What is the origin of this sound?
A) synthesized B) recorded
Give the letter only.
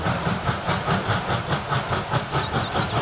B